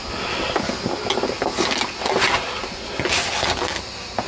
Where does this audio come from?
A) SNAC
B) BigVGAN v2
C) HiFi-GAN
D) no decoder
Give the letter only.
D